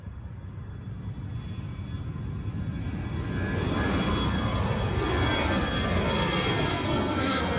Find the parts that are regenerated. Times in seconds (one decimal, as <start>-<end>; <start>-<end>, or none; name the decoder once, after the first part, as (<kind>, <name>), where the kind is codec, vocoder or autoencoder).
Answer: 6.7-7.6 (codec, SNAC)